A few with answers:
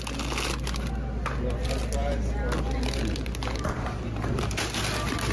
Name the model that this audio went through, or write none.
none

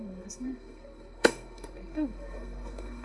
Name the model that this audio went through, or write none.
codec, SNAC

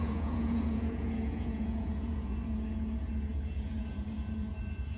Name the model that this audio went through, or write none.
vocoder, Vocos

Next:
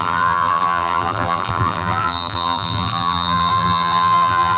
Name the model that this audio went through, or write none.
vocoder, BigVGAN v2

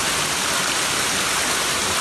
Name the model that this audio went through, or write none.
none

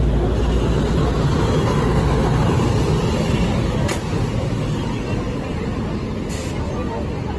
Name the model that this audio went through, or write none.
none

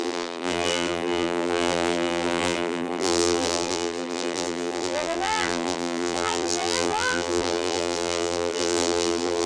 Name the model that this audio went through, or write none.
vocoder, BigVGAN v2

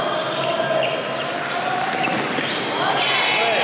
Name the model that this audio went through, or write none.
none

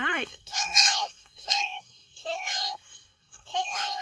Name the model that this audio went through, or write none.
codec, SNAC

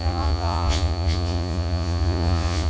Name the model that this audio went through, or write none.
vocoder, Vocos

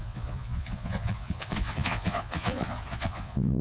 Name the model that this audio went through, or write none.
vocoder, Vocos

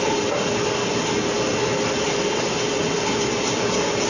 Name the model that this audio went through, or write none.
none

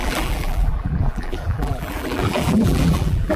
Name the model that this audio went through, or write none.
vocoder, BigVGAN v2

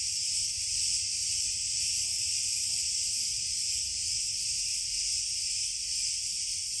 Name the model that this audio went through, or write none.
vocoder, BigVGAN v2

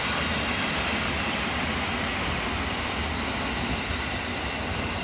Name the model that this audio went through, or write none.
none